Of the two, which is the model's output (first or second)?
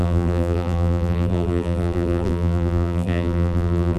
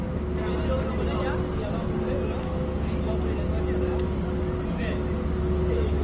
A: first